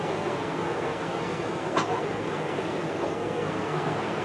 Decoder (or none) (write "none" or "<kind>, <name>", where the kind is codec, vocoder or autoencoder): codec, SNAC